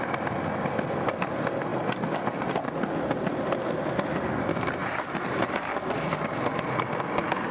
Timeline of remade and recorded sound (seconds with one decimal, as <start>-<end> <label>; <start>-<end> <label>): 0.0-4.8 recorded; 4.8-5.6 remade; 5.6-7.5 recorded